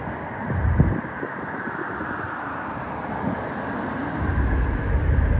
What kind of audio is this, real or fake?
real